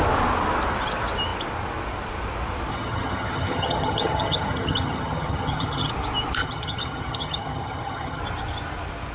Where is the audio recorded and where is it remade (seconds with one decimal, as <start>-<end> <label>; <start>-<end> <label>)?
0.0-2.7 recorded; 2.7-5.9 remade; 5.9-6.4 recorded; 6.4-8.2 remade; 8.2-9.1 recorded